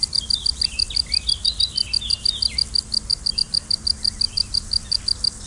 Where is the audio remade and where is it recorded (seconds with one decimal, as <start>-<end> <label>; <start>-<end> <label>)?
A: 0.0-5.5 recorded